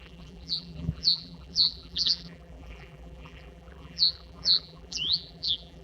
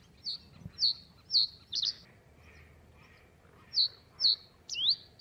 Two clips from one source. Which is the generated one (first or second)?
first